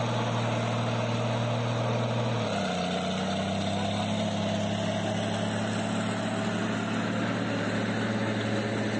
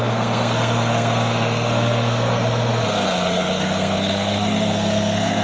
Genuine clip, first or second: first